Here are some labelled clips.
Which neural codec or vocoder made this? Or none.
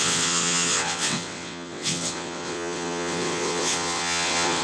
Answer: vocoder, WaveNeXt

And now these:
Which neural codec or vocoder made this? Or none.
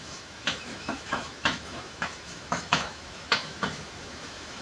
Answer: autoencoder, DAC-VAE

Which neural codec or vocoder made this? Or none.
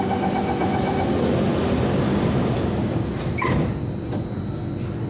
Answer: none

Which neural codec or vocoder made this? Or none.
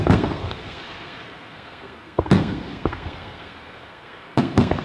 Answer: codec, SNAC